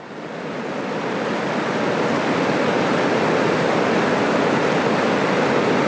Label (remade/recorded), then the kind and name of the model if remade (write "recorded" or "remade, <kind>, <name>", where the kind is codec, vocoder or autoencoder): recorded